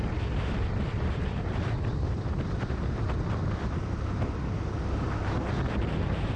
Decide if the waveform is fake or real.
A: real